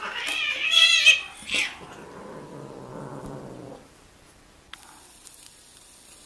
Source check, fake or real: real